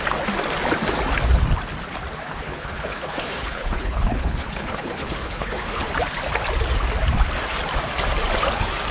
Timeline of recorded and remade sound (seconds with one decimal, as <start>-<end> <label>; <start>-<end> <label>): 0.0-2.2 recorded; 2.2-5.9 remade; 5.9-8.9 recorded